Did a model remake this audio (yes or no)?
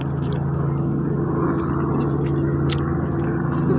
no